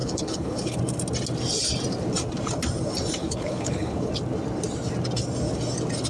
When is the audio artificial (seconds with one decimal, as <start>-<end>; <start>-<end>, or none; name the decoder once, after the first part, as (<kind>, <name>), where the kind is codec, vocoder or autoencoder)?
0.0-0.8 (codec, HILCodec); 3.2-4.1

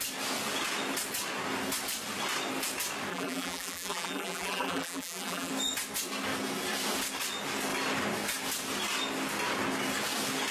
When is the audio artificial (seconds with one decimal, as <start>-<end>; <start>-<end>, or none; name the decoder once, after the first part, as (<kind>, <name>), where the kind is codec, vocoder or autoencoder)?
3.1-5.5 (vocoder, BigVGAN v2)